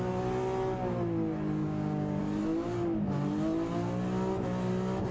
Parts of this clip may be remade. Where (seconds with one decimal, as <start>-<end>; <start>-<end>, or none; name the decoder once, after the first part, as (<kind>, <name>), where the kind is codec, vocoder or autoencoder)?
1.6-2.2 (codec, DAC)